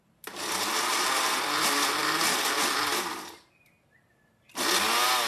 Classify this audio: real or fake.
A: real